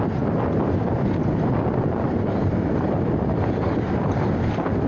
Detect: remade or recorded recorded